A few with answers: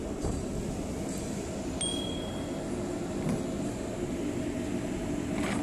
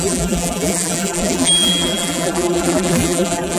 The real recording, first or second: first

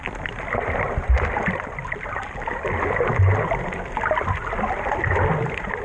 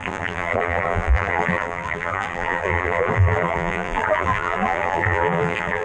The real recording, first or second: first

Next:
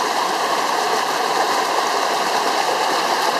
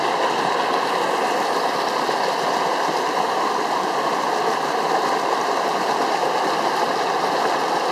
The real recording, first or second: second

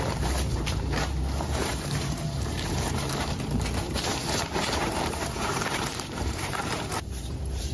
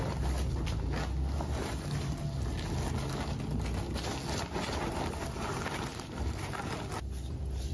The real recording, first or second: second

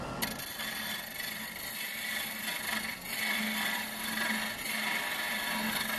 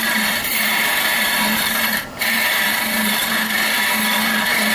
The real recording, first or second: first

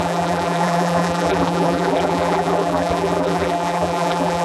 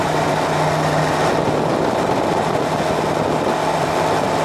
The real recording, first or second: second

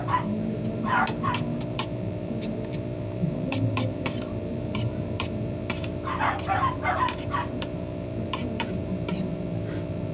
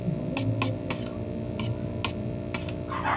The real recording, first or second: second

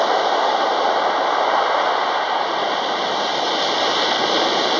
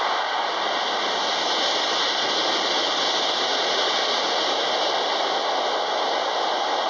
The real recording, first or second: second